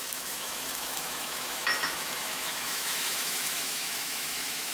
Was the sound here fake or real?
fake